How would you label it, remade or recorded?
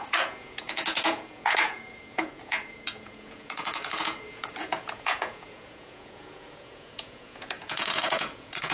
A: remade